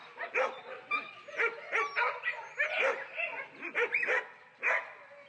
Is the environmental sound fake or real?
real